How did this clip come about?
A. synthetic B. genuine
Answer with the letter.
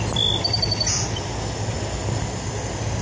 B